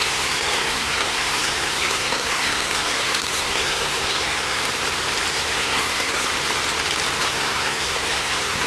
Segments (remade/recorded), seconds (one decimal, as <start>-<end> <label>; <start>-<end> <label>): 0.0-4.6 remade; 4.6-5.3 recorded; 5.3-6.3 remade; 6.3-7.2 recorded; 7.2-8.7 remade